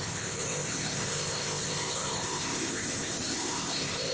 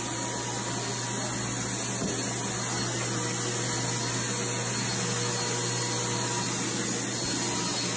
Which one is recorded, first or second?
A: second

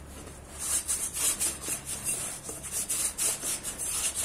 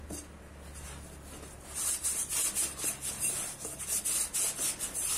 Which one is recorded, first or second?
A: second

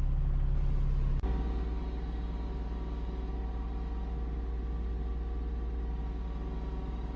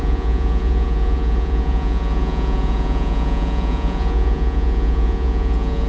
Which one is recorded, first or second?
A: first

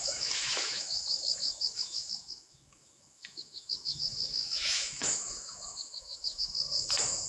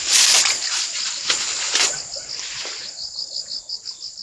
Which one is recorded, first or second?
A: second